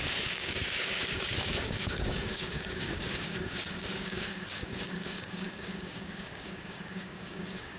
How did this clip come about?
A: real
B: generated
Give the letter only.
B